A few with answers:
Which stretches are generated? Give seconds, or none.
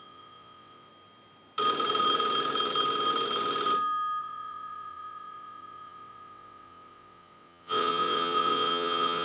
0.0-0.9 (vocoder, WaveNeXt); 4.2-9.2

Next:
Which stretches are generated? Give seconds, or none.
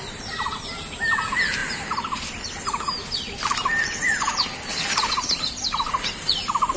none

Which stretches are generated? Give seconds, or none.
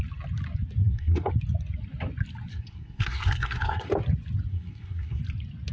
0.8-1.3 (codec, SNAC); 2.5-3.9; 4.5-5.2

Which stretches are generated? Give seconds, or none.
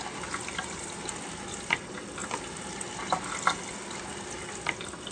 none